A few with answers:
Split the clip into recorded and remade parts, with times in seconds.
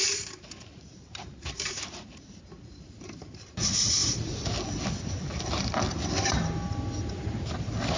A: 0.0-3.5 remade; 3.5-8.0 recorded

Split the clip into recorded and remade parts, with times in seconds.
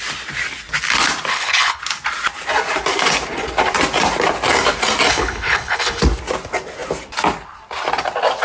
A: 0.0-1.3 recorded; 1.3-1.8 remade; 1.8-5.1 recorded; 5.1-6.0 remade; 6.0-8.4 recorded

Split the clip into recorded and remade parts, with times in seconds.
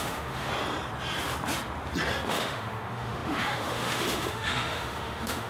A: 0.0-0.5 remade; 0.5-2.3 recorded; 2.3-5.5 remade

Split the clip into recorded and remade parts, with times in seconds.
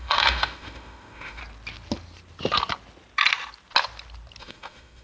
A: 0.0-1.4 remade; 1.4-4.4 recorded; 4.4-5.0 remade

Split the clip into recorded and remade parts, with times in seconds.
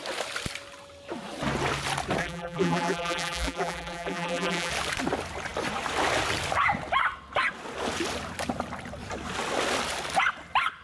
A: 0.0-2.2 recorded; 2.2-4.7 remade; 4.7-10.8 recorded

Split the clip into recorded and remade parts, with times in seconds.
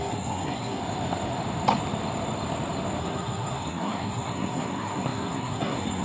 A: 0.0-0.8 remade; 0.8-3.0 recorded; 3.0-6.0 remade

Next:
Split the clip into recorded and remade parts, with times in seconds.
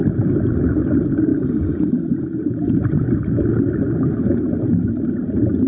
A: 0.0-5.7 recorded